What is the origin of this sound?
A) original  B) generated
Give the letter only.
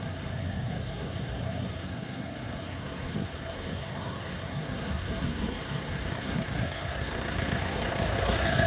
B